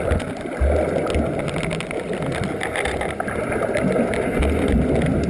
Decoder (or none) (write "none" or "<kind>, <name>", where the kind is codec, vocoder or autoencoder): none